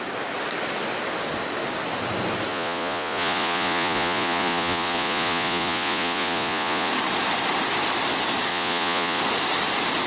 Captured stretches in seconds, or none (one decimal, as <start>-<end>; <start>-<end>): 0.0-2.5; 6.9-8.5; 9.2-10.1